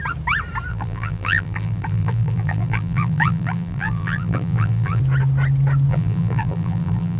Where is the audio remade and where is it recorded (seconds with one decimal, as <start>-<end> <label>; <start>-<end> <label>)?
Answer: 0.0-0.7 recorded; 0.7-5.0 remade; 5.0-5.9 recorded; 5.9-7.2 remade